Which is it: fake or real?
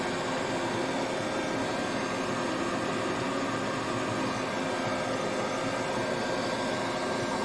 real